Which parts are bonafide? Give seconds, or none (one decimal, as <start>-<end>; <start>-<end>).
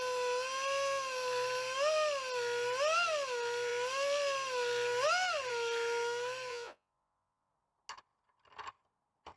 0.0-6.5; 7.5-9.4